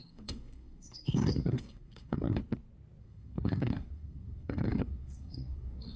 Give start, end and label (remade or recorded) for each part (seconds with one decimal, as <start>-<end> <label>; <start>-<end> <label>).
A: 0.0-2.4 remade; 2.4-3.0 recorded; 3.0-6.0 remade